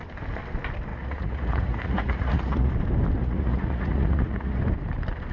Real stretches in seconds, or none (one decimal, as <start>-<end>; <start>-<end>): 0.0-0.9; 2.7-3.2; 4.6-5.3